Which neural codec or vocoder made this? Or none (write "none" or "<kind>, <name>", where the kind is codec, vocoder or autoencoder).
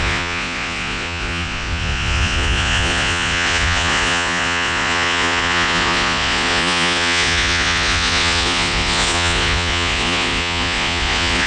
vocoder, Vocos